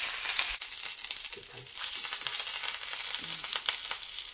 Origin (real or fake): real